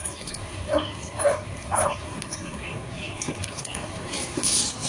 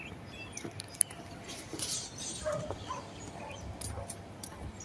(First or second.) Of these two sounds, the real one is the second